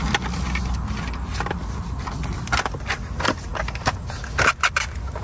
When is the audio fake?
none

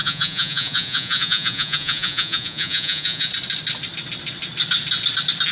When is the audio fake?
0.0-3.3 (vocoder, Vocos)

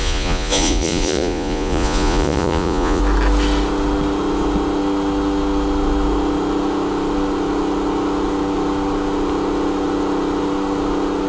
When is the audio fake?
0.0-3.0 (vocoder, Vocos)

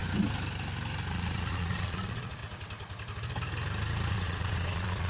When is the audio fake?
1.1-2.4 (vocoder, Vocos); 4.1-5.1